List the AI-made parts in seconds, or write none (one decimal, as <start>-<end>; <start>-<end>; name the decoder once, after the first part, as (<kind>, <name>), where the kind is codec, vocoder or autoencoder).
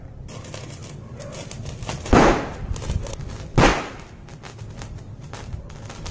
none